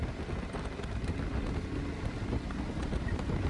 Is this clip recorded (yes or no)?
yes